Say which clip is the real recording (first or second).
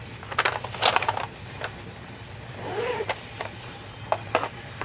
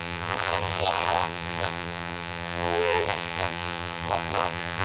first